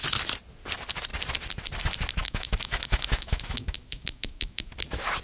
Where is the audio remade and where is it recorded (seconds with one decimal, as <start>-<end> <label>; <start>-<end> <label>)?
0.0-2.2 recorded; 2.2-4.7 remade; 4.7-5.2 recorded